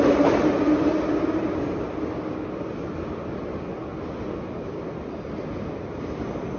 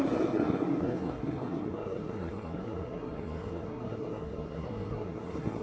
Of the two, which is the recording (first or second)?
first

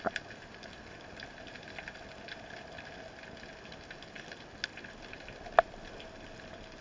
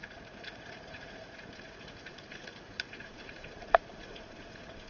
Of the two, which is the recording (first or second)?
first